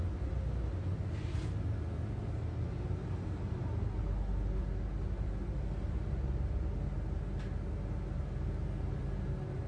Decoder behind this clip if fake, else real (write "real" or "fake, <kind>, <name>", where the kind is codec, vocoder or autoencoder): real